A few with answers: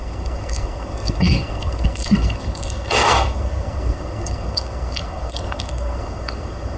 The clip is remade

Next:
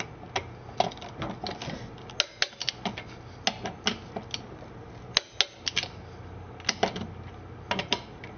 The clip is recorded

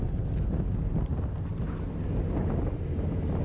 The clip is recorded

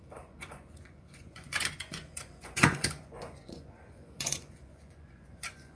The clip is remade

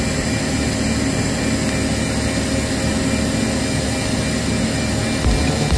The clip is recorded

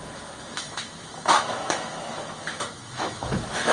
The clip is remade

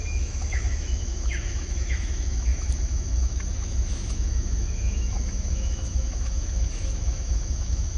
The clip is remade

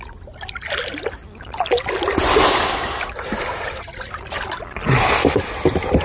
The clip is recorded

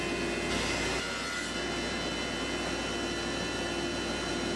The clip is recorded